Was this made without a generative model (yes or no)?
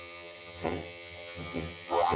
no